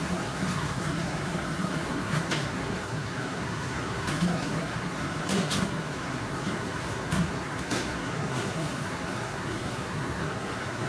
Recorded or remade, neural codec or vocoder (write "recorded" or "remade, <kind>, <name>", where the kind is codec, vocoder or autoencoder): remade, codec, SNAC